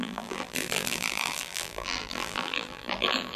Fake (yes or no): yes